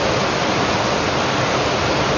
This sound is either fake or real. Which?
real